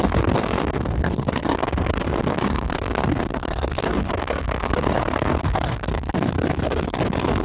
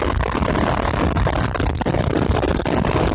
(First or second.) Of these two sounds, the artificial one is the first